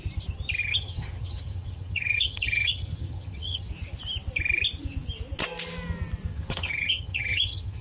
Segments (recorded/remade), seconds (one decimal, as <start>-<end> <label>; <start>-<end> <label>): 0.0-0.6 recorded; 0.6-3.7 remade; 3.7-6.3 recorded; 6.3-7.8 remade